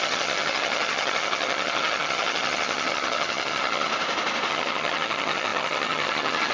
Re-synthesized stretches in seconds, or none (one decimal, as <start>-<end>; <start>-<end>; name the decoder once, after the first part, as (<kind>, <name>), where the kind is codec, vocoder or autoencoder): 0.0-3.9 (vocoder, HiFi-GAN); 4.5-6.5

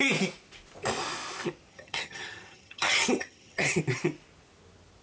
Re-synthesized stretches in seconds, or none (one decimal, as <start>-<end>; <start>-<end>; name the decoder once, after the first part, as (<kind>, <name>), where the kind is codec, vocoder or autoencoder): 1.7-3.8 (vocoder, HiFi-GAN)